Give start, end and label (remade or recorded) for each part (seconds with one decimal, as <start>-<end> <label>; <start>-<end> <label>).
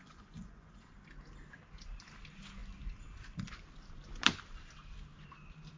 0.0-0.9 remade; 0.9-5.8 recorded